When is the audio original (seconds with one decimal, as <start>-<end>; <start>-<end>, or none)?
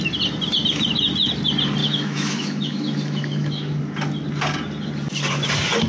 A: 0.0-1.8; 3.8-5.9